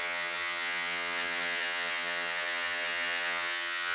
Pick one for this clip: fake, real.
fake